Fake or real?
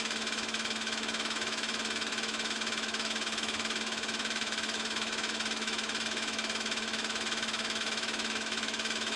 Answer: fake